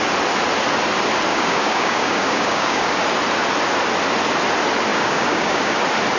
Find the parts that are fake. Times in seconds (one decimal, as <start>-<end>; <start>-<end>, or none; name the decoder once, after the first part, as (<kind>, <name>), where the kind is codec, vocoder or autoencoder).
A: 1.3-3.0 (codec, DAC); 4.9-5.8